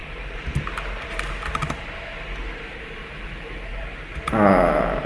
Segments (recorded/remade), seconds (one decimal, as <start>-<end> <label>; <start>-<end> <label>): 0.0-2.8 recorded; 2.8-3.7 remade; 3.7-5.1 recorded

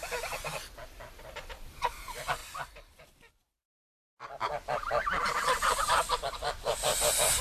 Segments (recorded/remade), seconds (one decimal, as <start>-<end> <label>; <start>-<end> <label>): 0.0-1.3 recorded; 1.3-4.8 remade; 4.8-5.4 recorded; 5.4-7.4 remade

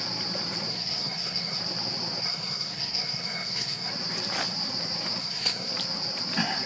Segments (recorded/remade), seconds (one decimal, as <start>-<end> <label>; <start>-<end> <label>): 0.0-0.7 recorded; 0.7-1.6 remade; 1.6-2.2 recorded; 2.2-3.9 remade; 3.9-5.2 recorded; 5.2-5.7 remade; 5.7-6.7 recorded

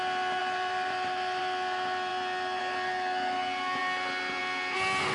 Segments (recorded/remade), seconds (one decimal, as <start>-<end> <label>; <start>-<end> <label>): 0.0-0.4 recorded; 0.4-1.4 remade; 1.4-5.1 recorded

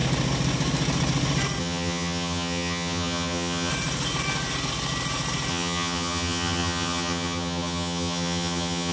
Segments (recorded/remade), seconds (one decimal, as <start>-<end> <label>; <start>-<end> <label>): 0.0-1.6 recorded; 1.6-3.7 remade; 3.7-5.5 recorded; 5.5-8.9 remade